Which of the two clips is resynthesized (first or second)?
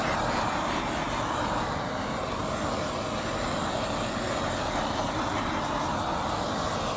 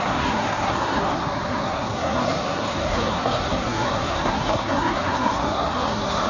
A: second